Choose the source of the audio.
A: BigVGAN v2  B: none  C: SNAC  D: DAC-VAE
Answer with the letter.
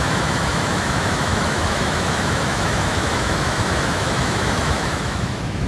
D